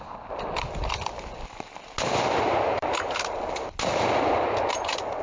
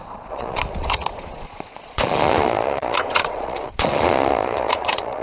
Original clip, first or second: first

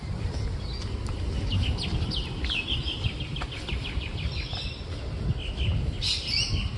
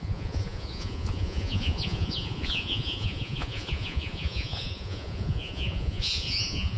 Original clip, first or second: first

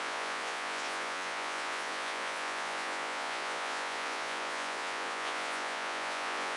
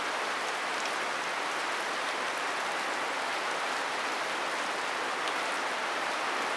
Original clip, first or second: second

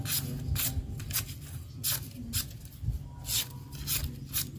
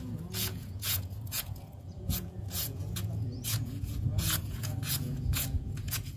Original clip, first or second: first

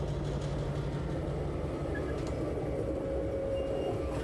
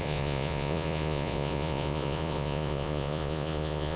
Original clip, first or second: first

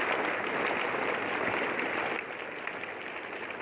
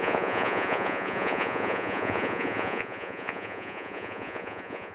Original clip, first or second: first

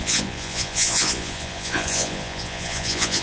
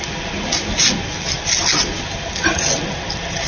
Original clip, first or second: second